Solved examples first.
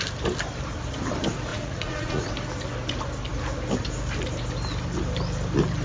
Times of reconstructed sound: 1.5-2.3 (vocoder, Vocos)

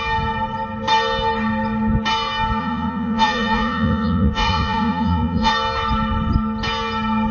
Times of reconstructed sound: 2.6-5.5 (vocoder, Vocos)

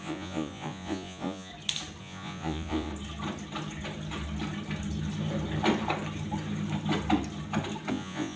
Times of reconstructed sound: 0.0-1.5 (vocoder, Vocos); 2.0-2.9; 7.9-8.4

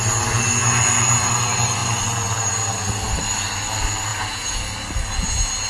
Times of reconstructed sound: 4.1-4.6 (vocoder, Vocos)

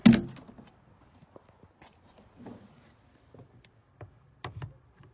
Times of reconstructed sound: none

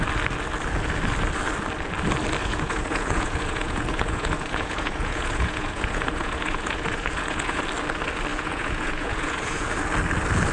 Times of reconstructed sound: 2.4-7.6 (vocoder, Vocos); 8.3-9.7

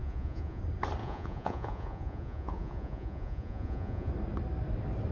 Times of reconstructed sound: 0.0-0.6 (vocoder, Vocos); 1.0-4.1